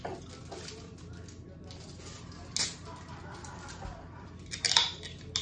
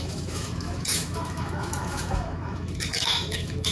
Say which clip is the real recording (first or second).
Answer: first